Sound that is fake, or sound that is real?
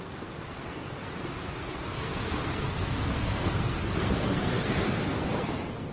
fake